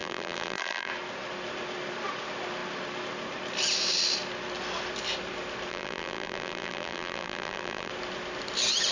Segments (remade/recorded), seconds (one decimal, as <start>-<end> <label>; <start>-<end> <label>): 0.0-0.9 remade; 0.9-5.7 recorded; 5.7-7.9 remade; 7.9-8.9 recorded